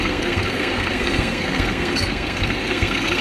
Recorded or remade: remade